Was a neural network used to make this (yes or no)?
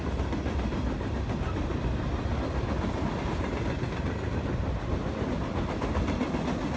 no